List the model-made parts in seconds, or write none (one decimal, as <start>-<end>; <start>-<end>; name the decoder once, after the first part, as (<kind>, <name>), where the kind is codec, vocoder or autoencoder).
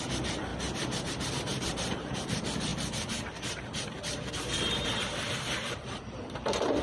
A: 0.0-0.5 (vocoder, BigVGAN v2); 1.3-6.8